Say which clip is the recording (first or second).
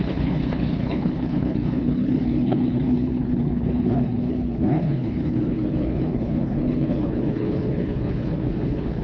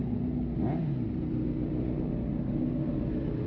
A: second